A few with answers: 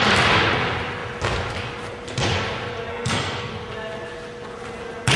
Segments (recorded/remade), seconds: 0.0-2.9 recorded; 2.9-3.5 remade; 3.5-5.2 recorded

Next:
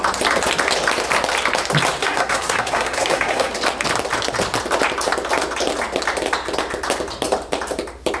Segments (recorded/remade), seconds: 0.0-2.0 recorded; 2.0-3.5 remade; 3.5-8.2 recorded

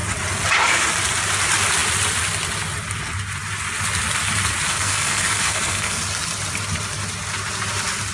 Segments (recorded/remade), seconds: 0.0-4.7 recorded; 4.7-6.0 remade; 6.0-8.1 recorded